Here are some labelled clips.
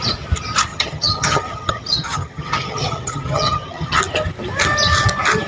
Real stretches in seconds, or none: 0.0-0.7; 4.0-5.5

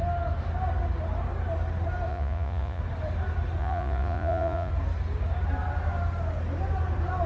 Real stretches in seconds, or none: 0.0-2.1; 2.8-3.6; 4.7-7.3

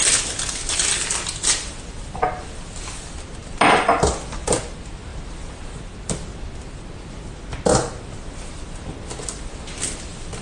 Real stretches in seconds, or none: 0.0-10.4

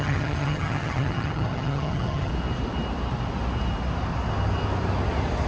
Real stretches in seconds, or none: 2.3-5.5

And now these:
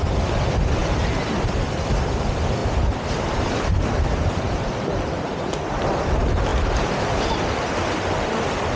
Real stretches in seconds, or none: 0.0-2.6; 5.8-6.5; 7.4-8.8